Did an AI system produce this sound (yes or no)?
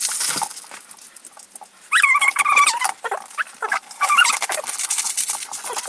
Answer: no